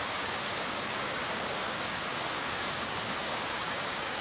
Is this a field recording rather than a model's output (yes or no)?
no